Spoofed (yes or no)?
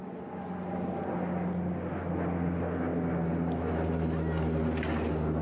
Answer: no